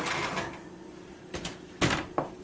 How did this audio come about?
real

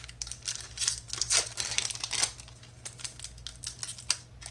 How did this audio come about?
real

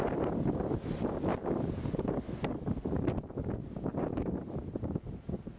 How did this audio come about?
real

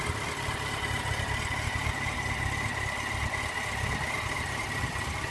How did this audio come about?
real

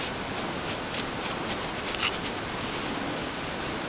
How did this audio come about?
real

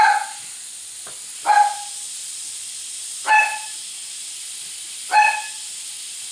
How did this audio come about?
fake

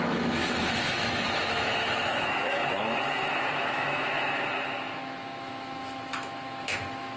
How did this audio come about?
fake